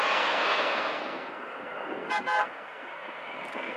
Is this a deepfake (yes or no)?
yes